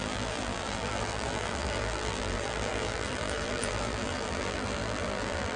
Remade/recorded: remade